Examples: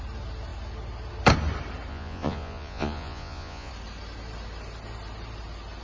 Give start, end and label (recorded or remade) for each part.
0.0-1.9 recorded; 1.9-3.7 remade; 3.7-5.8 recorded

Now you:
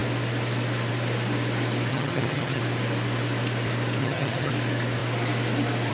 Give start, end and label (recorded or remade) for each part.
0.0-1.9 recorded; 1.9-2.6 remade; 2.6-4.0 recorded; 4.0-4.5 remade; 4.5-5.9 recorded

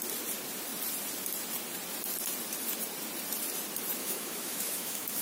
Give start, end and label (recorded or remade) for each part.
0.0-4.0 recorded; 4.0-5.2 remade